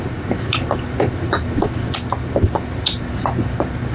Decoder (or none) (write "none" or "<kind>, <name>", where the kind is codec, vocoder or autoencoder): none